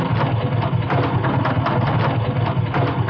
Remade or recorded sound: recorded